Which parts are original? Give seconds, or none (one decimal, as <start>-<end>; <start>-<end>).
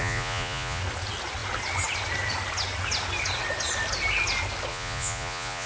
0.8-4.7